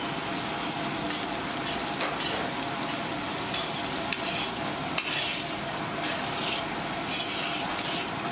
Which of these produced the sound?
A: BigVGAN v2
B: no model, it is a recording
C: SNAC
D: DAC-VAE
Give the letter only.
B